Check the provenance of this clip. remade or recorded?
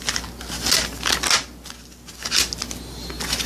recorded